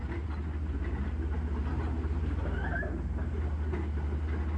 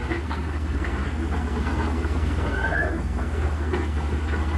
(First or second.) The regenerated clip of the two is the second